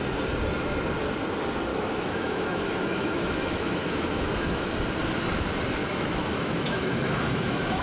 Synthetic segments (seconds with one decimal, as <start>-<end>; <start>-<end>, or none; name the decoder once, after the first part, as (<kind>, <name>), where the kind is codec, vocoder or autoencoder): 1.7-4.7 (autoencoder, DAC-VAE); 5.8-7.8